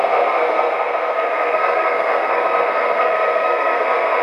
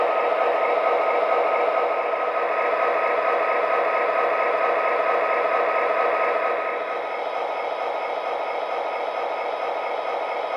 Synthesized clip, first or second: first